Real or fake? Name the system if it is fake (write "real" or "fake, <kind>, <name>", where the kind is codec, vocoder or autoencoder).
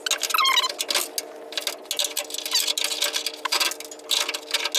real